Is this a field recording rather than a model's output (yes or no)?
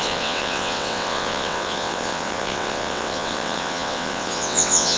no